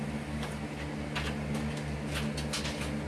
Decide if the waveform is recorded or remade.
recorded